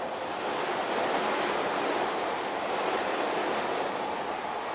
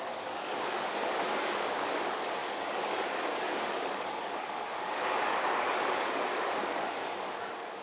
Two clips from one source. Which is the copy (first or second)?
second